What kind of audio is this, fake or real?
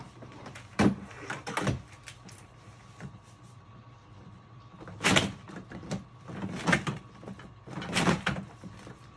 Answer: real